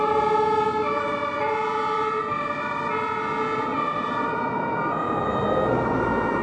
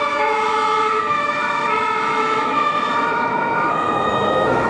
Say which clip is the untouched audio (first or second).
first